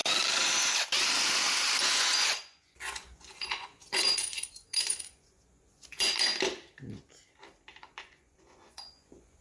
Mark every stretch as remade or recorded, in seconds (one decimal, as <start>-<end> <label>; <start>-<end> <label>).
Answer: 0.0-1.8 recorded; 1.8-6.3 remade; 6.3-7.8 recorded; 7.8-9.4 remade